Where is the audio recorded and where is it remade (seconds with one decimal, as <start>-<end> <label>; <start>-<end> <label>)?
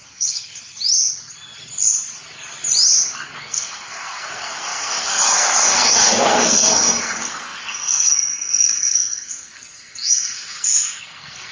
0.0-0.6 remade; 0.6-3.4 recorded; 3.4-11.5 remade